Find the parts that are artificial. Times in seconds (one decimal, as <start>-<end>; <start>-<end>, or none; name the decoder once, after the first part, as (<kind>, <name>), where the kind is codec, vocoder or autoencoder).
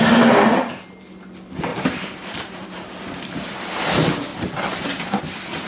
1.7-3.8 (vocoder, BigVGAN v2); 4.3-5.2